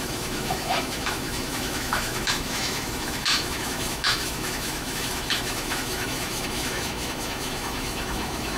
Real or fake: fake